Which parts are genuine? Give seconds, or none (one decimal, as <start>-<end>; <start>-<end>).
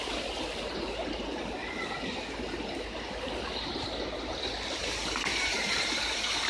1.6-4.8